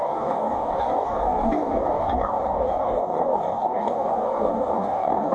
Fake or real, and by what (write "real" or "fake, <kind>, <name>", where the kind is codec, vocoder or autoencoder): fake, codec, DAC